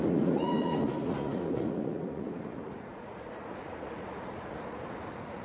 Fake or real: fake